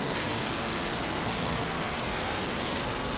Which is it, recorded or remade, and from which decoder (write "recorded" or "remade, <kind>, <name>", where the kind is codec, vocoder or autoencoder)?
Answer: remade, codec, SNAC